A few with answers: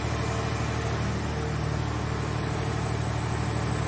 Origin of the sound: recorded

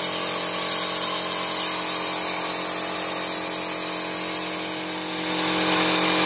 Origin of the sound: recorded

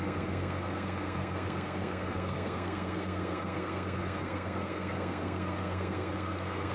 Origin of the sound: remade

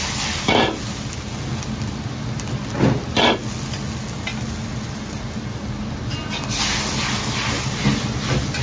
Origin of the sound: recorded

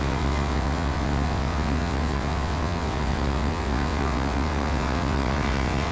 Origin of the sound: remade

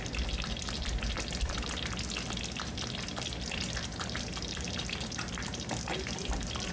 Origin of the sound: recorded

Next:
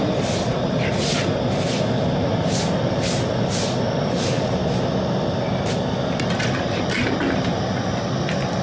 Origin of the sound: recorded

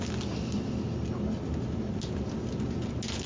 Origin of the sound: recorded